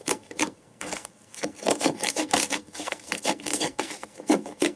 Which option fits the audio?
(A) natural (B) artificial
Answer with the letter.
B